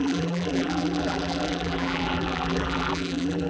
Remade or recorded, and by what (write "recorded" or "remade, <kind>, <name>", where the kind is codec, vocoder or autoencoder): remade, vocoder, BigVGAN v2